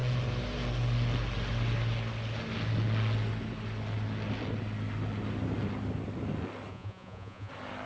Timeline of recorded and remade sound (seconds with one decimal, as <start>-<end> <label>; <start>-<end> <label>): 0.0-6.7 recorded; 6.7-7.5 remade; 7.5-7.9 recorded